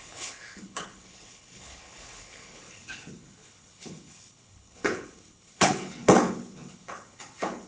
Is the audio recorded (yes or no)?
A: no